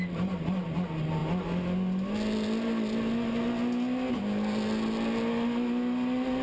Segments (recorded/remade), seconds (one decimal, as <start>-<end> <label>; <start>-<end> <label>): 0.0-6.4 recorded